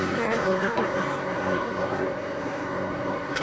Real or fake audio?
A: fake